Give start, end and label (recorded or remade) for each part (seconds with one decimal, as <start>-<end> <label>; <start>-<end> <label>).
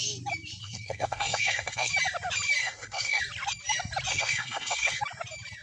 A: 0.0-0.6 recorded; 0.6-1.9 remade; 1.9-2.6 recorded; 2.6-3.2 remade; 3.2-4.1 recorded; 4.1-5.0 remade; 5.0-5.6 recorded